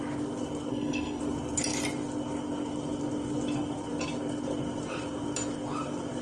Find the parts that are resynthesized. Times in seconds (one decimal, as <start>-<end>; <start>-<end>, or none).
0.7-1.2